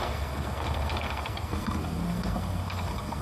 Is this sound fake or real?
fake